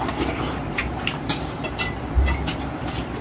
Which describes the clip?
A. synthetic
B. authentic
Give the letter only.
A